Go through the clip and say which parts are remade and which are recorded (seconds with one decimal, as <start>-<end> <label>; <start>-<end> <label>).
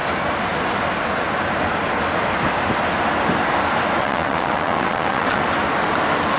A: 0.0-4.0 recorded; 4.0-5.4 remade; 5.4-6.4 recorded